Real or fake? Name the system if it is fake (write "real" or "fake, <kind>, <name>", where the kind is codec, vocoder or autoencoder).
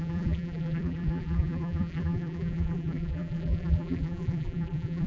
fake, vocoder, BigVGAN v2